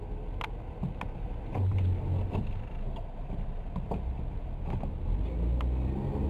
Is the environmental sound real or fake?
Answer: real